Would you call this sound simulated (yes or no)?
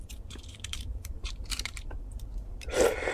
yes